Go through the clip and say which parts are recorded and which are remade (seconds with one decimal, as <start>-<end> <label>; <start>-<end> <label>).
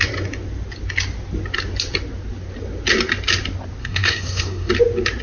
0.0-3.8 recorded; 3.8-4.7 remade; 4.7-5.2 recorded